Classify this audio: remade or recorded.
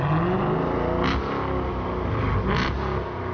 recorded